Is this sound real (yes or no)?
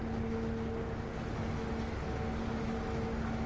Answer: yes